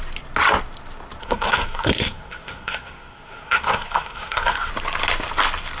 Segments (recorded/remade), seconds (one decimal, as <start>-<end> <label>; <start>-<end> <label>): 0.0-1.2 recorded; 1.2-4.7 remade; 4.7-5.8 recorded